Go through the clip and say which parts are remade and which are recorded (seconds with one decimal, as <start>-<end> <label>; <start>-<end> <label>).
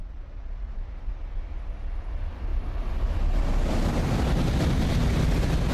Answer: 0.0-5.7 recorded